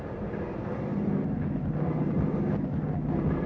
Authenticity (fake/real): real